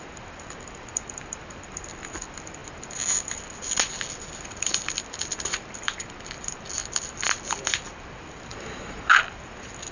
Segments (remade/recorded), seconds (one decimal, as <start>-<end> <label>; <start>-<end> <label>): 0.0-8.5 recorded; 8.5-9.1 remade; 9.1-9.9 recorded